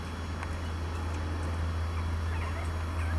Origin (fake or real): real